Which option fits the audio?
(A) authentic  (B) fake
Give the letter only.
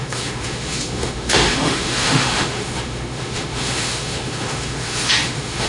B